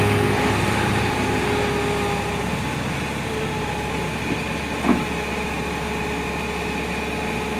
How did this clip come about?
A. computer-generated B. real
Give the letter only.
B